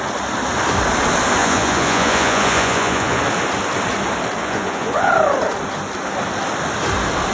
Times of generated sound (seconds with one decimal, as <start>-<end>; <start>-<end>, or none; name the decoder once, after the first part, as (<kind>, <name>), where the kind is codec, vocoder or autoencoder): 1.4-3.2 (vocoder, Vocos); 4.4-5.1